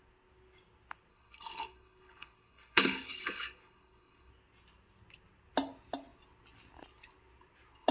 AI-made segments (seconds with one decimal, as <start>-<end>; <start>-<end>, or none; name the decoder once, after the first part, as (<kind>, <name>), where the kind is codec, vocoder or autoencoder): 1.1-4.3 (codec, HILCodec)